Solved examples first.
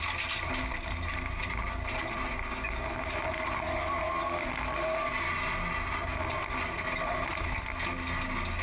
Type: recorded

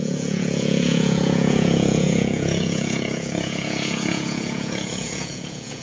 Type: remade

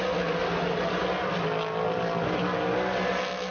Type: recorded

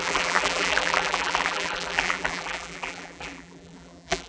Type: remade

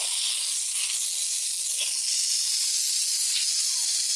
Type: recorded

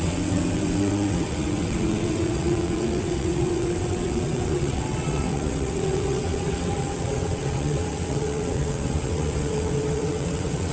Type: remade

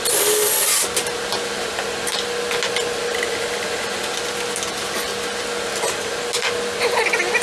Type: recorded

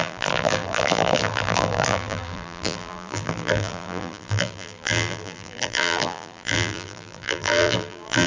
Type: remade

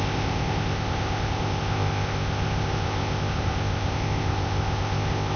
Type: remade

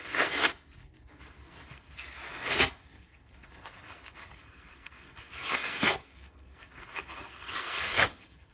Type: remade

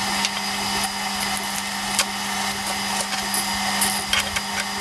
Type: recorded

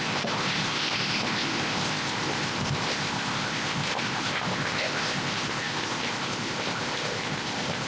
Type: remade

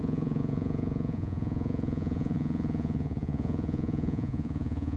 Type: remade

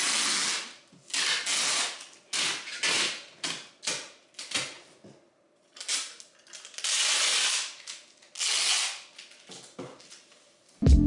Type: recorded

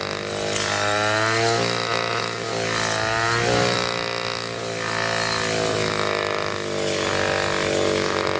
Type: recorded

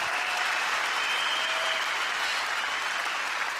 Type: recorded